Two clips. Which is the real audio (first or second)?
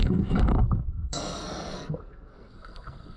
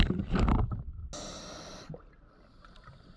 second